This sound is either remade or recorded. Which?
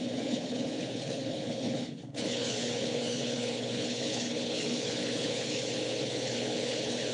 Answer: remade